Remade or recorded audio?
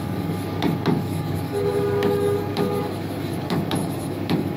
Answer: remade